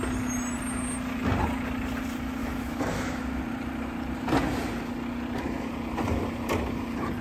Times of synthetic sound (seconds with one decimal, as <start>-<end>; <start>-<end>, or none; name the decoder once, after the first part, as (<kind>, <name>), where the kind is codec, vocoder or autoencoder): 2.4-3.4 (autoencoder, DAC-VAE)